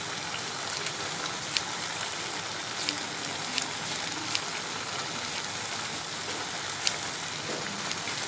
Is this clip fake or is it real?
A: real